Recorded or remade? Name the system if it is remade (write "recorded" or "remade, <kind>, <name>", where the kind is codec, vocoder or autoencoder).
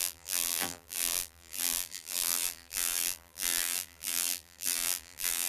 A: remade, vocoder, BigVGAN v2